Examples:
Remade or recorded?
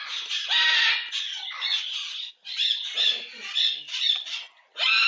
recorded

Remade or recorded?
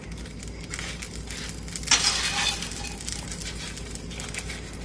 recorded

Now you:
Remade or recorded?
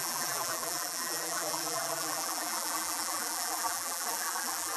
remade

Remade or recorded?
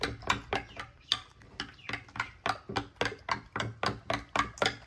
recorded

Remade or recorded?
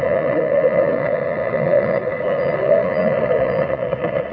remade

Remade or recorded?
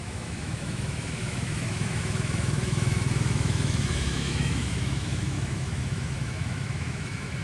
remade